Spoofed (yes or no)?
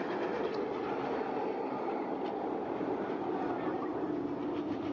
no